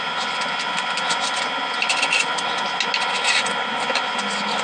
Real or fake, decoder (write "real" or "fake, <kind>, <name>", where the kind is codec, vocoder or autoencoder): real